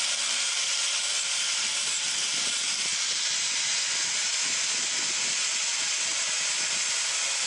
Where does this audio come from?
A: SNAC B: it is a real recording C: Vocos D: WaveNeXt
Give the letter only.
B